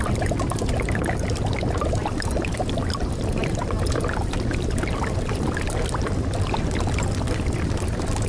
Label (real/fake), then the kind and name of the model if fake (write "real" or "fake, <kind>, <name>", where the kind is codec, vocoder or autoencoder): real